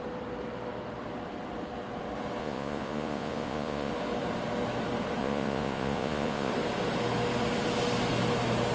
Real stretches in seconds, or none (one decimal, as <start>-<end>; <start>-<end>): 0.0-2.4; 3.9-5.2; 6.5-8.7